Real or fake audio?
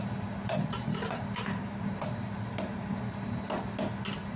real